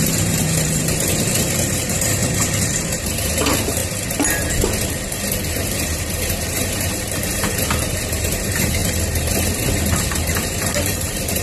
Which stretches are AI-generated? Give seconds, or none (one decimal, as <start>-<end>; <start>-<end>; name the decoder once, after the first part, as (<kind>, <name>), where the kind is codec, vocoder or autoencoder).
0.0-2.2 (vocoder, BigVGAN v2); 3.0-3.8; 5.5-8.8; 9.9-11.4